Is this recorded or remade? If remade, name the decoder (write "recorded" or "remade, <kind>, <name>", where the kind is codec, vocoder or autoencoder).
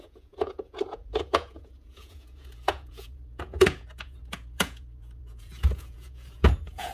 remade, vocoder, Vocos